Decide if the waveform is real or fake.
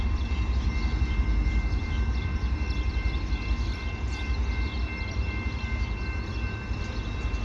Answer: fake